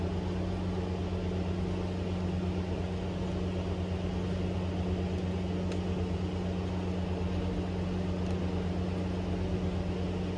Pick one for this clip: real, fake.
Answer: real